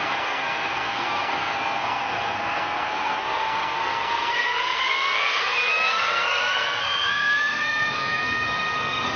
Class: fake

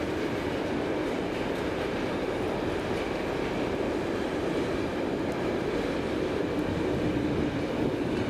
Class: real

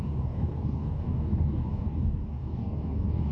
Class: fake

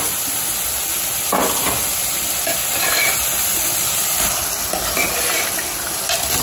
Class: real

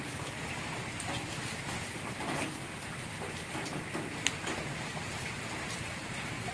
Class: real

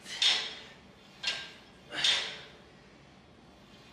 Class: real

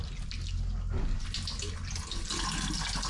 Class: real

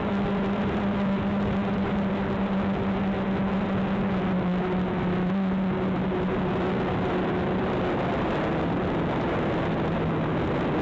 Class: real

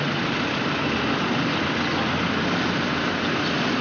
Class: real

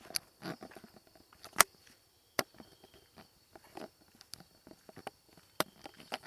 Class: real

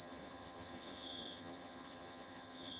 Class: fake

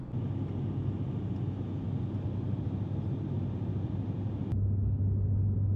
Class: real